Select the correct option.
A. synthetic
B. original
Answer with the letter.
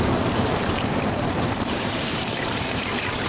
A